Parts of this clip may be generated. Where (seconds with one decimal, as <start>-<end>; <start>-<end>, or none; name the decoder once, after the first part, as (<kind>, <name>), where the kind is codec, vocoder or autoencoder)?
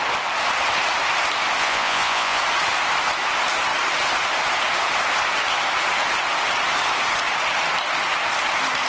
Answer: 1.6-2.4 (vocoder, Vocos)